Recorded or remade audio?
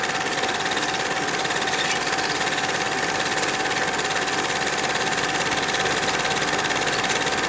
recorded